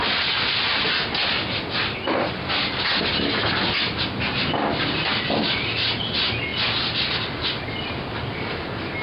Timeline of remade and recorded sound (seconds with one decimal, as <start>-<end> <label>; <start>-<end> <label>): 0.0-9.0 recorded